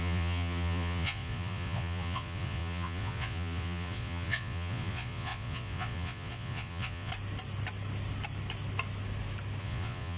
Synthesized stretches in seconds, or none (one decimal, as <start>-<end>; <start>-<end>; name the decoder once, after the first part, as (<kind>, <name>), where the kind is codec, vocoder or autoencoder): 0.0-7.1 (vocoder, Vocos); 9.6-10.2